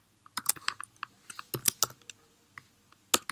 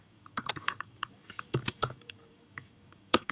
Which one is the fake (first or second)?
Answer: second